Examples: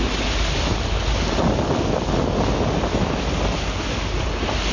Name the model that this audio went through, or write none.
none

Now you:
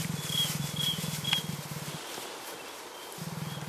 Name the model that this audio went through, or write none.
none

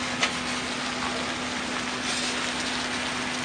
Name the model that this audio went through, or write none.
none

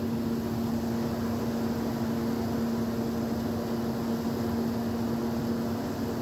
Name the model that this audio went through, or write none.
none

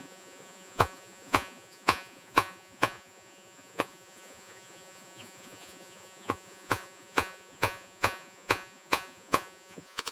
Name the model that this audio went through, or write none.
vocoder, Vocos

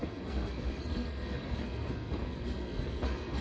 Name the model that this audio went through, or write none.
codec, SNAC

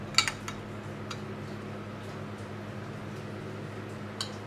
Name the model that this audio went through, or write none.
none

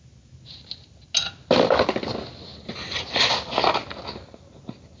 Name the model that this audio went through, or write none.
none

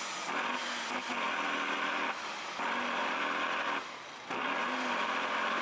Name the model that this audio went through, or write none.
none